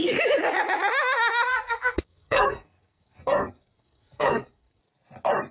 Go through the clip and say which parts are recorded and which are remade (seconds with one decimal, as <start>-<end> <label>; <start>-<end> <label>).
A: 0.0-1.5 recorded; 1.5-4.8 remade; 4.8-5.5 recorded